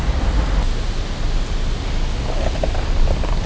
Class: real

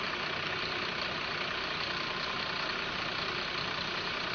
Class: real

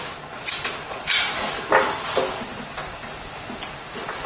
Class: real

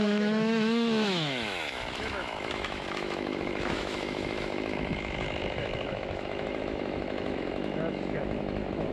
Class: fake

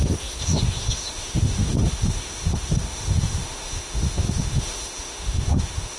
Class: fake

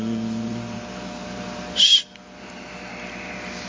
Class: real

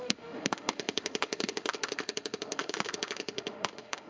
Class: fake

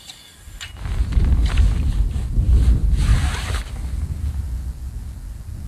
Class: real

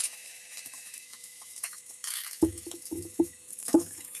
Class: fake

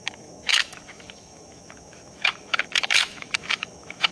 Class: fake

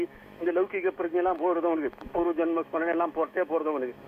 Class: fake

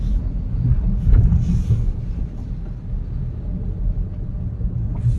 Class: real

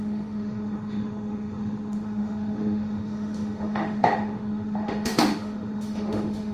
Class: fake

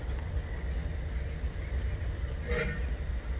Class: real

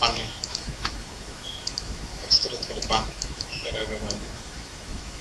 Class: fake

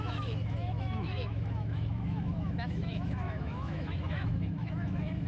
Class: fake